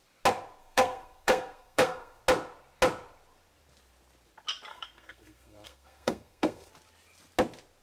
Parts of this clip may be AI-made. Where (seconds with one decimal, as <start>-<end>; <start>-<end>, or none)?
0.6-2.2; 4.7-6.7